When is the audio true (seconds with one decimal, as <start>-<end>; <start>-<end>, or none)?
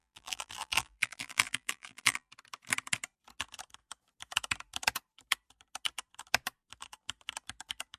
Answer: 2.3-8.0